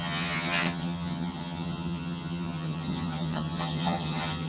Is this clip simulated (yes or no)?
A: yes